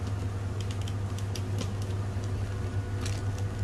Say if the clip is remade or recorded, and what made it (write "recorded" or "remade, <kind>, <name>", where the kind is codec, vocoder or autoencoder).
recorded